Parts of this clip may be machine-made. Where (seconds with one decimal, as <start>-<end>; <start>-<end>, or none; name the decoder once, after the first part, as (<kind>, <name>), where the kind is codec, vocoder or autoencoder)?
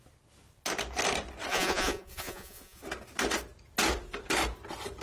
1.5-2.8 (vocoder, Vocos)